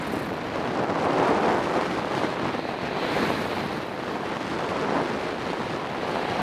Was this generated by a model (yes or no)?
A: no